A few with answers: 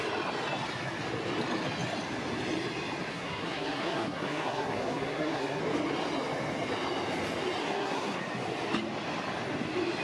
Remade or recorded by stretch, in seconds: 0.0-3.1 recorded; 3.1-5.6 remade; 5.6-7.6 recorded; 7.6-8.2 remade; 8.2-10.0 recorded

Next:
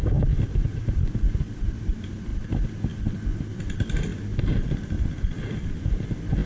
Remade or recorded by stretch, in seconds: 0.0-6.5 recorded

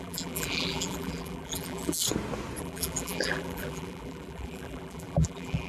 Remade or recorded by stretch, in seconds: 0.0-2.0 remade; 2.0-2.6 recorded; 2.6-5.7 remade

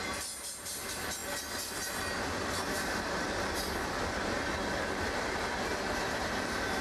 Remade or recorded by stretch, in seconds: 0.0-6.8 recorded

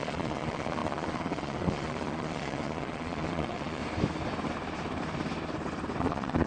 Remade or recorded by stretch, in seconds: 0.0-3.8 remade; 3.8-6.0 recorded; 6.0-6.5 remade

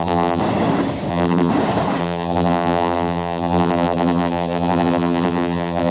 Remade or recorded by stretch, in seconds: 0.0-0.4 remade; 0.4-1.1 recorded; 1.1-1.5 remade; 1.5-2.0 recorded; 2.0-5.9 remade

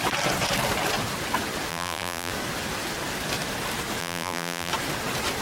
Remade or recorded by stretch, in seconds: 0.0-1.7 recorded; 1.7-2.3 remade; 2.3-4.0 recorded; 4.0-4.7 remade; 4.7-5.4 recorded